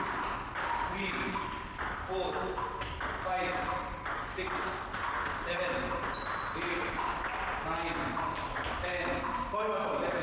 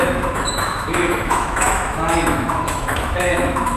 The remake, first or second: second